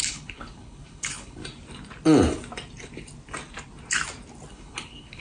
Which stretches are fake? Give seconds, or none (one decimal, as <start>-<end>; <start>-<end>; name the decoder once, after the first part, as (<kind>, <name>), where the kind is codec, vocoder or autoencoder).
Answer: 0.0-1.4 (codec, HILCodec); 4.5-5.2